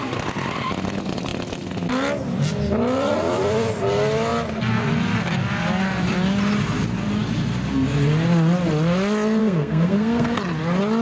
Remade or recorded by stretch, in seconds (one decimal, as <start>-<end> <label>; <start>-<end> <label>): 0.0-9.4 recorded; 9.4-10.4 remade; 10.4-11.0 recorded